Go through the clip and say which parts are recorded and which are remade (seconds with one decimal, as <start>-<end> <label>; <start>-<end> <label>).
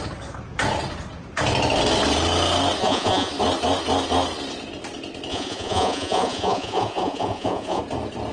0.0-2.8 recorded; 2.8-3.3 remade; 3.3-5.3 recorded; 5.3-7.8 remade; 7.8-8.3 recorded